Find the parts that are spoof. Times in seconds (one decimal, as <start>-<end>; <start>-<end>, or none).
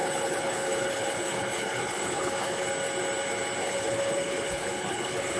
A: 0.0-2.7; 3.6-5.4